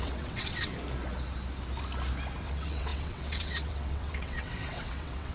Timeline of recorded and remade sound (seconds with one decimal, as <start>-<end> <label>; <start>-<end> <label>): 0.0-0.7 remade; 0.7-2.4 recorded; 2.4-5.3 remade

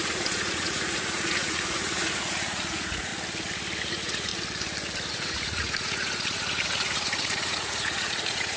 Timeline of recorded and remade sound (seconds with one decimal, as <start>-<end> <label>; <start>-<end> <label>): 0.0-3.1 remade; 3.1-3.9 recorded; 3.9-4.3 remade; 4.3-5.1 recorded; 5.1-8.6 remade

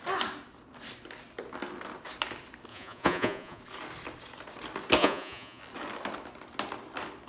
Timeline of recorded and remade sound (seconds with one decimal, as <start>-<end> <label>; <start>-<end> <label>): 0.0-2.7 recorded; 2.7-3.6 remade; 3.6-5.0 recorded; 5.0-5.6 remade; 5.6-7.3 recorded

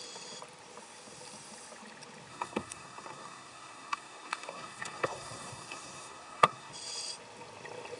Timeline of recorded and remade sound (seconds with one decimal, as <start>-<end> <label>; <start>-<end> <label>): 0.0-2.3 recorded; 2.3-6.7 remade; 6.7-8.0 recorded

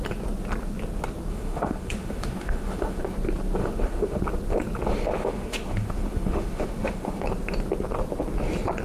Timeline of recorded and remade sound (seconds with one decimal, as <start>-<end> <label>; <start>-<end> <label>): 0.0-1.3 recorded; 1.3-3.0 remade; 3.0-3.6 recorded; 3.6-4.2 remade; 4.2-5.2 recorded; 5.2-7.2 remade; 7.2-8.8 recorded

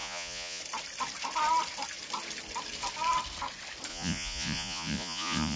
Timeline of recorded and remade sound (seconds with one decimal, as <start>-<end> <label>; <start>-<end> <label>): 0.0-0.6 remade; 0.6-3.9 recorded; 3.9-5.6 remade

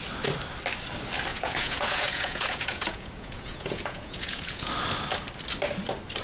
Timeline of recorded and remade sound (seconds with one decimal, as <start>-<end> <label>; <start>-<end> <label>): 0.0-1.3 recorded; 1.3-4.7 remade; 4.7-6.2 recorded